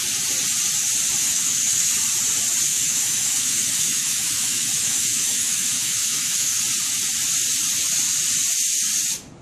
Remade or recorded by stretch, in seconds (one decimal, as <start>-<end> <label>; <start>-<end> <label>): 0.0-1.2 recorded; 1.2-1.9 remade; 1.9-2.7 recorded; 2.7-6.6 remade; 6.6-9.4 recorded